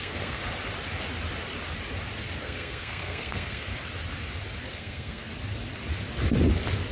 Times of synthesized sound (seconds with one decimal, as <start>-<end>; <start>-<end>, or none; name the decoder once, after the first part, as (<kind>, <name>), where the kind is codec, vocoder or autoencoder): 0.0-0.4 (codec, SNAC); 2.4-3.7; 4.7-5.3